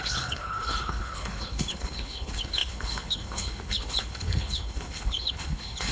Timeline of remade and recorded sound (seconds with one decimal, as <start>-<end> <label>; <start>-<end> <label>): 0.0-5.9 remade